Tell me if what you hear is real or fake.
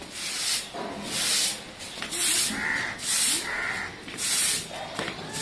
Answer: real